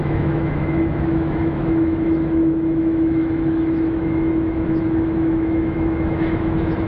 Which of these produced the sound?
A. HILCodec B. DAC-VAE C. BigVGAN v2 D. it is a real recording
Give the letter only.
B